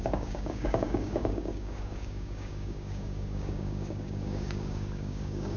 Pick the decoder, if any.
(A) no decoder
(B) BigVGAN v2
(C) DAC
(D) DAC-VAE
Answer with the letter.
C